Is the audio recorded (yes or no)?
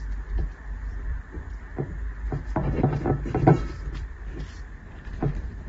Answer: no